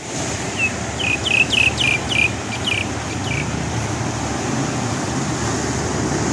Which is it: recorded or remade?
recorded